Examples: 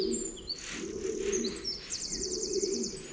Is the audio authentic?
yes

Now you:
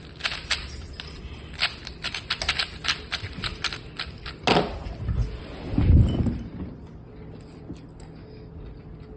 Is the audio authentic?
yes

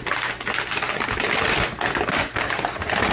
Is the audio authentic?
yes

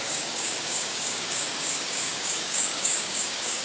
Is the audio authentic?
no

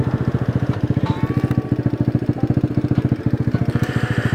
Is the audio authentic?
yes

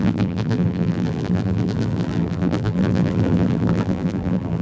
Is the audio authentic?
no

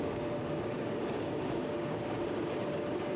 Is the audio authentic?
no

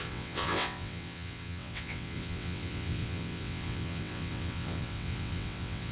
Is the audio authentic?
no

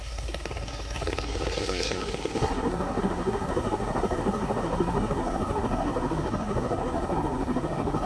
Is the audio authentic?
no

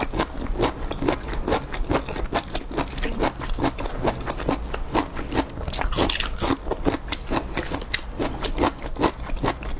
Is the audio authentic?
yes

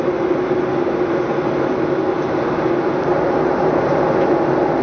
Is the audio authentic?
yes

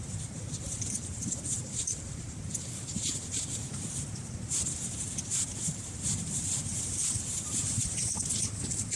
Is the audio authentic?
no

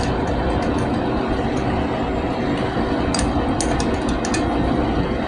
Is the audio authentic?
yes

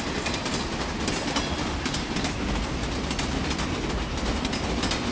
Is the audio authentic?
yes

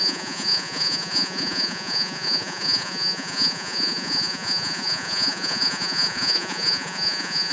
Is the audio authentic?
no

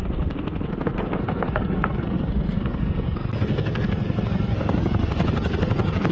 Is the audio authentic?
no